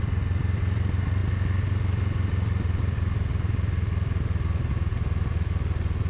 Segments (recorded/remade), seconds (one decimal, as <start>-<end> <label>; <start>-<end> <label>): 0.0-6.1 recorded